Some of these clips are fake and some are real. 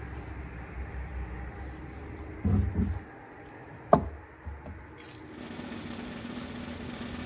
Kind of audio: real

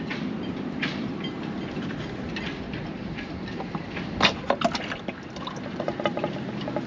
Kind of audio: real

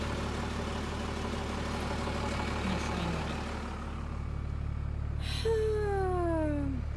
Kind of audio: real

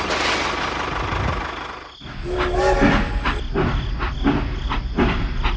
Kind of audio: real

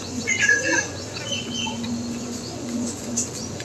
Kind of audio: fake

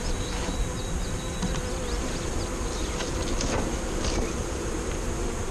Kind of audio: real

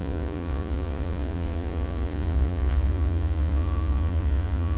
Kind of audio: fake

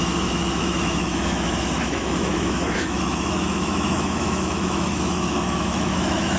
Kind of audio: fake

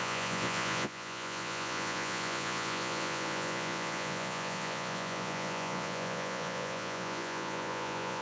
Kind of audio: fake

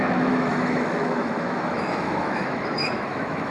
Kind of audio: fake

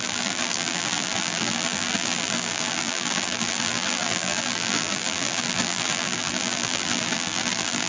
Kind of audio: fake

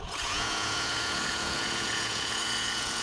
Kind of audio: fake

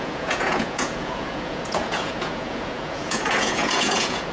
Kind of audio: fake